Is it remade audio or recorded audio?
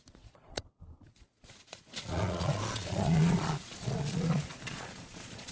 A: remade